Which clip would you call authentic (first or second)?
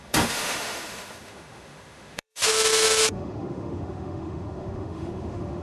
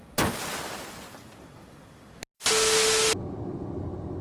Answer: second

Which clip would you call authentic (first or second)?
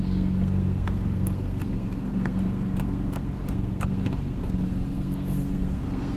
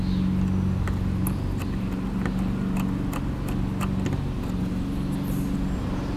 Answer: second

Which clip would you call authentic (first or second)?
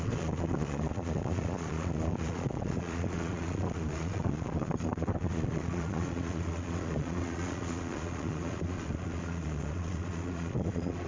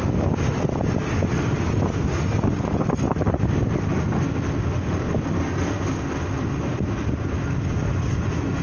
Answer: second